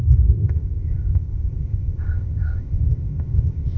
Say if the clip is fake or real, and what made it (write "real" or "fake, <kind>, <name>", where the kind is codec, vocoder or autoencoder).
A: fake, codec, ZipCodec